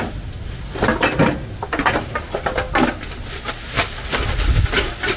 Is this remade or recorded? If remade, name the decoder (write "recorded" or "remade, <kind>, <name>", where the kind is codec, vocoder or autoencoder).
recorded